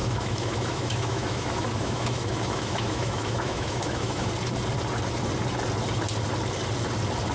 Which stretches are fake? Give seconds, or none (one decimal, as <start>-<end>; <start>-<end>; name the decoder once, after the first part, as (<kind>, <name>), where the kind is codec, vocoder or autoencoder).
0.0-4.3 (autoencoder, DAC-VAE)